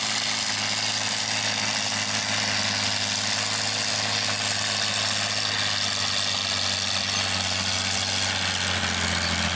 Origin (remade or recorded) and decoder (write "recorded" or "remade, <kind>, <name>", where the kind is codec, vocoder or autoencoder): recorded